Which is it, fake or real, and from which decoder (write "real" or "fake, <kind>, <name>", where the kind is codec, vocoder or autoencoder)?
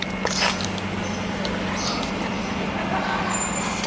real